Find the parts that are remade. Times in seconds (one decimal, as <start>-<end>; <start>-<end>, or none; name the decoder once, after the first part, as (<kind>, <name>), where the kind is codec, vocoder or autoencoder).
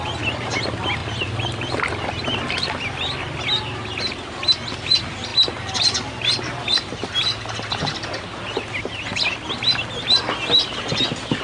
none